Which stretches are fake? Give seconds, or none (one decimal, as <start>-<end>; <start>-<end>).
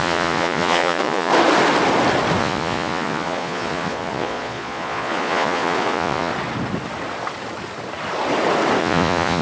0.0-1.3; 2.4-6.3; 8.8-9.4